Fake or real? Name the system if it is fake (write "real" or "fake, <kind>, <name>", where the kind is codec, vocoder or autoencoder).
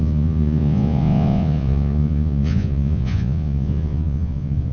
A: fake, vocoder, Vocos